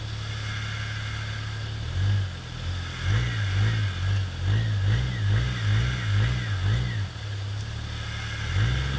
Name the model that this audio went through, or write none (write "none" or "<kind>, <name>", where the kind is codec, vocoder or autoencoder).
none